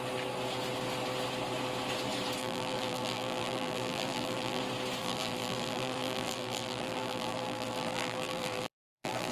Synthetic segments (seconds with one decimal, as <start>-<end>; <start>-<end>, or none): 2.4-4.6; 5.0-9.3